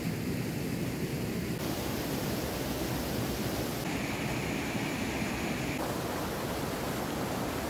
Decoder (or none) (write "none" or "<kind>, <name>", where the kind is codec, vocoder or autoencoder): none